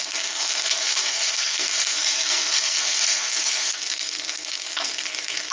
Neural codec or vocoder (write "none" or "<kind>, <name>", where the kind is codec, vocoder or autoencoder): codec, SNAC